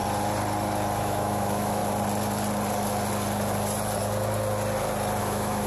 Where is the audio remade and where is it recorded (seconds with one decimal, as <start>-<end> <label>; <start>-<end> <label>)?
0.0-1.0 recorded; 1.0-1.8 remade; 1.8-5.2 recorded; 5.2-5.7 remade